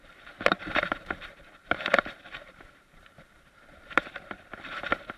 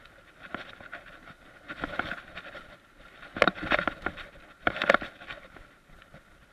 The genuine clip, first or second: second